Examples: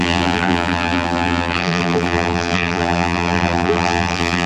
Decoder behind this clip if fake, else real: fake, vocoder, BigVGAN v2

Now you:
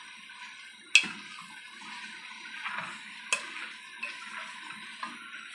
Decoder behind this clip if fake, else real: real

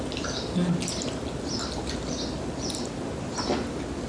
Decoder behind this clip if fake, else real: real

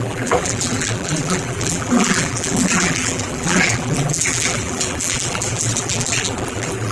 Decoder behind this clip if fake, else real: fake, vocoder, BigVGAN v2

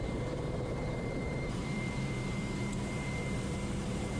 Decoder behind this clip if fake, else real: fake, vocoder, BigVGAN v2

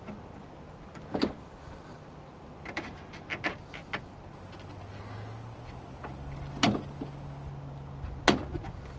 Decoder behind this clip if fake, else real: real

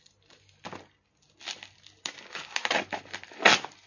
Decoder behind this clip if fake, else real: real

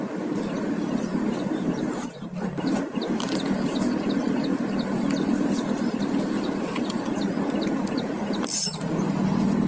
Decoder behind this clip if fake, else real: fake, vocoder, BigVGAN v2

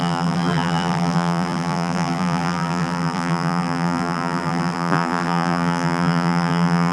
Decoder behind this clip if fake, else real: fake, vocoder, BigVGAN v2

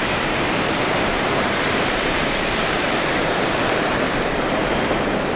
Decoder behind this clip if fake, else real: fake, vocoder, BigVGAN v2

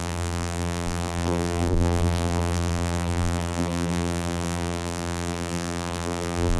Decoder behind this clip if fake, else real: fake, vocoder, BigVGAN v2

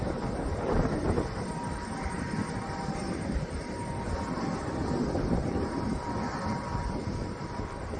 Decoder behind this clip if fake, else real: fake, vocoder, BigVGAN v2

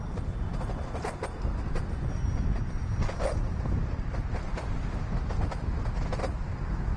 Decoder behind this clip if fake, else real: real